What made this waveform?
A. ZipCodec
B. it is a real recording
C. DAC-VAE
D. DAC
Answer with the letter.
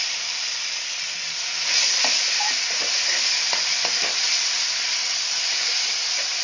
B